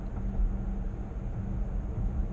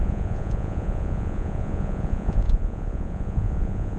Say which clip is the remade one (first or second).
second